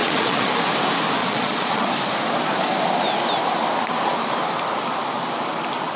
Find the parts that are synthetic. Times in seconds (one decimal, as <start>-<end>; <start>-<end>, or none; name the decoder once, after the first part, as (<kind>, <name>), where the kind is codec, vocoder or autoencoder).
0.0-0.5 (vocoder, Vocos); 1.2-1.9